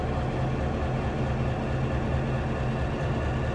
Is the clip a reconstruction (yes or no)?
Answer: no